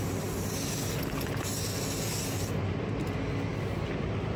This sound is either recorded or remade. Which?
recorded